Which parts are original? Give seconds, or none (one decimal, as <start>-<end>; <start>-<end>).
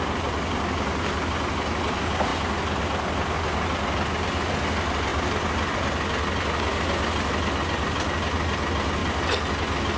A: 0.0-10.0